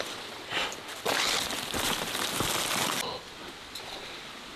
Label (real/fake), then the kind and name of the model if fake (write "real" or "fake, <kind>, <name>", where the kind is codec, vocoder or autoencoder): real